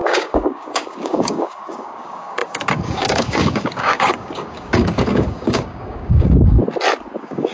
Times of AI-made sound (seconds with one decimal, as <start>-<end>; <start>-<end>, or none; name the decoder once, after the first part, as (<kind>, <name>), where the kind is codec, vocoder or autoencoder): 0.0-6.6 (codec, DAC); 7.1-7.5